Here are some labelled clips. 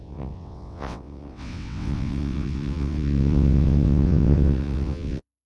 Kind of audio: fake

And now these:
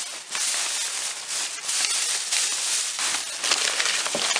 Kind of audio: real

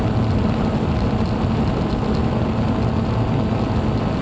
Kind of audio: real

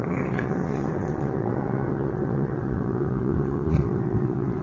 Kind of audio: fake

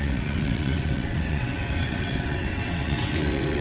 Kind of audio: fake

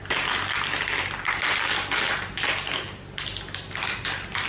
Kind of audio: real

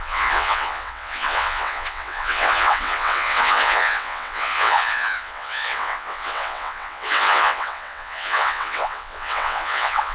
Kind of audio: fake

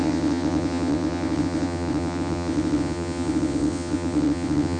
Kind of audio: fake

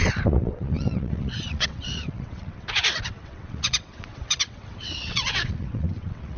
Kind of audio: fake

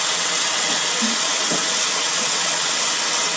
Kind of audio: fake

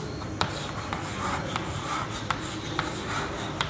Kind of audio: real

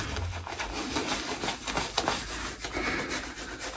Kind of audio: real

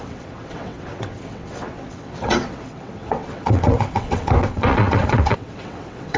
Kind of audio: fake